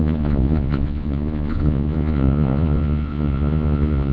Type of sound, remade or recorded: remade